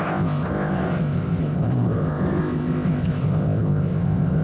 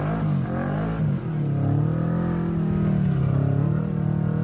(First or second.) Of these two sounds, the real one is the second